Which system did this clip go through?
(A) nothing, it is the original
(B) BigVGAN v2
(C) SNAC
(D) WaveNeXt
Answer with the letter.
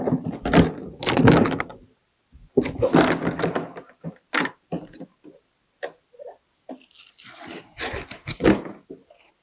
A